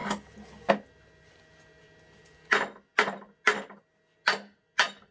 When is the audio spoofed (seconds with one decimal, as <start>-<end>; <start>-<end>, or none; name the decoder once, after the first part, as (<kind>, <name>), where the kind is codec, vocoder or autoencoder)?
none